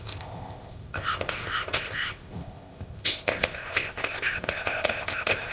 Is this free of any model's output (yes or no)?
no